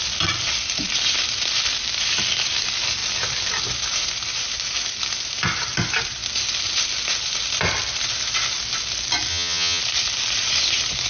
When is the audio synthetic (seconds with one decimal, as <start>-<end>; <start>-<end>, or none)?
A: 9.3-9.8